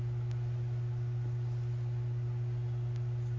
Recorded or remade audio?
recorded